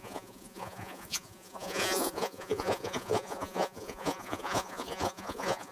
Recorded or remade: remade